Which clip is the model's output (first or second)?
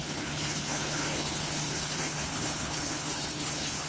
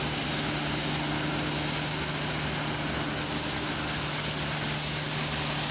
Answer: first